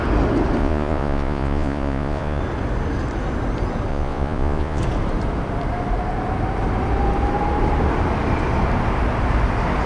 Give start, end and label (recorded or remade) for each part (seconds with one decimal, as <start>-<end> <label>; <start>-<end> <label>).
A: 0.0-0.6 recorded; 0.6-2.4 remade; 2.4-3.9 recorded; 3.9-4.8 remade; 4.8-9.9 recorded